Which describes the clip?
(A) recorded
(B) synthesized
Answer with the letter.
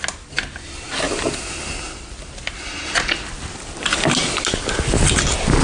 A